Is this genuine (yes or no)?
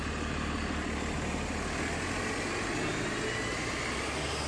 yes